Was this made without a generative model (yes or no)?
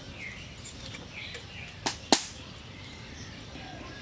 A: yes